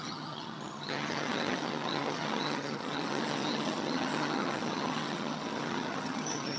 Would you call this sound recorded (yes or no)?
no